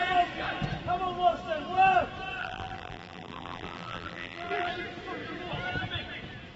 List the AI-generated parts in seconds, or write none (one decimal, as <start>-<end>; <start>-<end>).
2.4-4.7